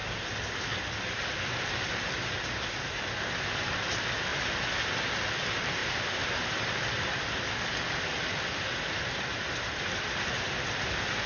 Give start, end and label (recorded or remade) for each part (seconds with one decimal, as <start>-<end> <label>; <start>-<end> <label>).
0.0-4.3 recorded; 4.3-5.0 remade; 5.0-5.8 recorded; 5.8-9.8 remade; 9.8-11.3 recorded